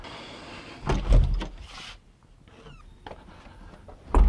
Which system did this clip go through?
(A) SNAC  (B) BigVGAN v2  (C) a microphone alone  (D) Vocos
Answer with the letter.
C